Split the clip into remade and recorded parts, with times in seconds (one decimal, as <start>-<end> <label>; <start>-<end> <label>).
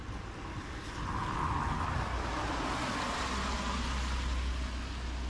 0.0-5.3 recorded